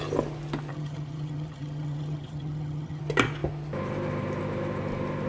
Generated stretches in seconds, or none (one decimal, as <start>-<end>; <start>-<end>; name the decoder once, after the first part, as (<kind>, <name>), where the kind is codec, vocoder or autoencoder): 0.7-3.0 (vocoder, HiFi-GAN)